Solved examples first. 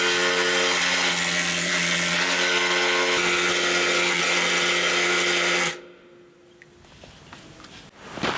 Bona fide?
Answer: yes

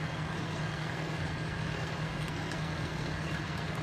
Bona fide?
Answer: no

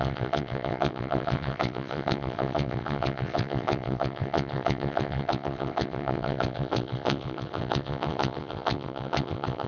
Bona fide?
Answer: no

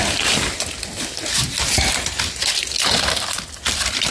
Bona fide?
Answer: yes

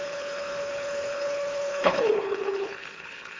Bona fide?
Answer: no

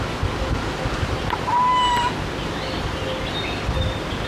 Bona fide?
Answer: yes